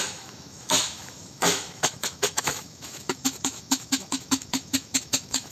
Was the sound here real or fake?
fake